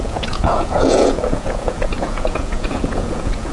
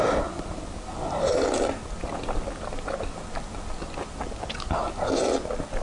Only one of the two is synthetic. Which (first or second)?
first